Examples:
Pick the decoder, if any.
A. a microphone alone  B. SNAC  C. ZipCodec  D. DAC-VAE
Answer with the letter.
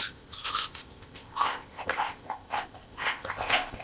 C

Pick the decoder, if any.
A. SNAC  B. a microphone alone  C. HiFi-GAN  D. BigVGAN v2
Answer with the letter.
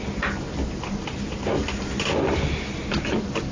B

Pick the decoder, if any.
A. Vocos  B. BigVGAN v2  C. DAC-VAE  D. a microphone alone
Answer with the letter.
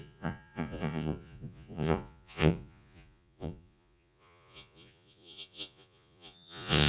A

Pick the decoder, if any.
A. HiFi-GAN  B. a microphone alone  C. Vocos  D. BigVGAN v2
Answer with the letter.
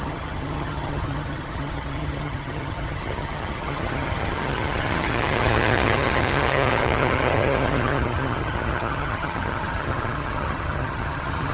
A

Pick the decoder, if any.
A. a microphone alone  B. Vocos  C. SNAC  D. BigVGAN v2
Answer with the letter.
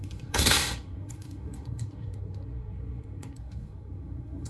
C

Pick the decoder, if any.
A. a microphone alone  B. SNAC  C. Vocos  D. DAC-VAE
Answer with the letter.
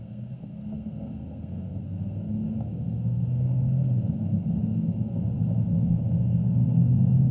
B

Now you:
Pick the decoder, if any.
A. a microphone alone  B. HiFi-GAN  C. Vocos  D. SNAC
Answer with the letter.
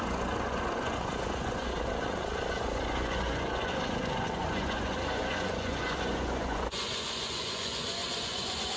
C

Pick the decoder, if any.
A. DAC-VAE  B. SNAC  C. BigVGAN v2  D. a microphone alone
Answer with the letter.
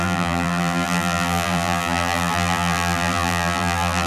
C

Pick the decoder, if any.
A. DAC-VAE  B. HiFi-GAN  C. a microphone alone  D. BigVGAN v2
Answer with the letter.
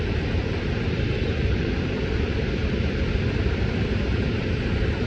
D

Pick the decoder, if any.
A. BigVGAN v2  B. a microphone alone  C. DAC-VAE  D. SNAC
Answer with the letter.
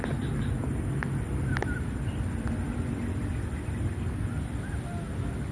B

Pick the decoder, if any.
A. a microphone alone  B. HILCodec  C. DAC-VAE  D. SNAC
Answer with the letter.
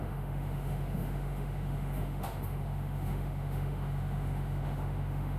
C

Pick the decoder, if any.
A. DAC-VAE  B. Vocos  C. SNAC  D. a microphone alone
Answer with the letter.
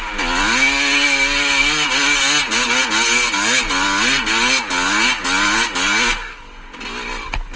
D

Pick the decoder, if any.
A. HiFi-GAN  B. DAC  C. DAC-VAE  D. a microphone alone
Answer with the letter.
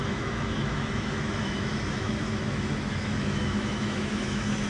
C